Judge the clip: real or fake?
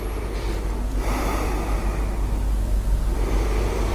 real